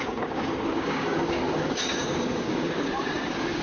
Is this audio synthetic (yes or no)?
yes